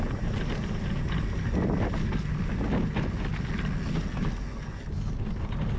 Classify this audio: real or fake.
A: real